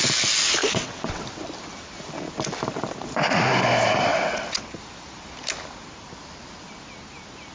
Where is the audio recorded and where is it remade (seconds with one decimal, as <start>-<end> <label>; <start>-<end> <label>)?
0.0-0.6 recorded; 0.6-1.2 remade; 1.2-4.1 recorded; 4.1-4.8 remade; 4.8-7.5 recorded